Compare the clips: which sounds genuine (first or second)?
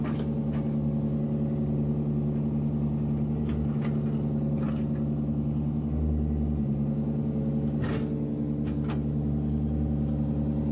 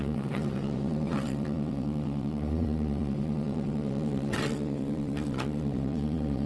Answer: first